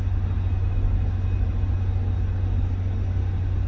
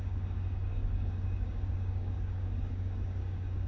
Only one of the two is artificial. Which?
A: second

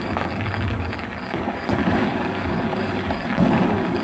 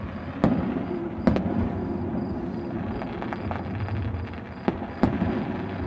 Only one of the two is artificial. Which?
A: first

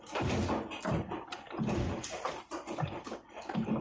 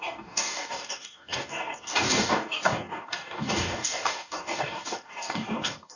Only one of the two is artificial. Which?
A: second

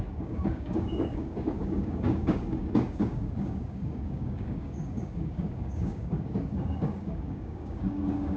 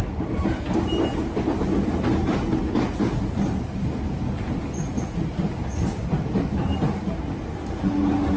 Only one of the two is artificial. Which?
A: first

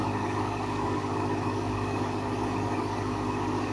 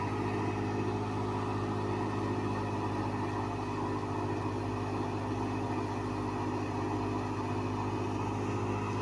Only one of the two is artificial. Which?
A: first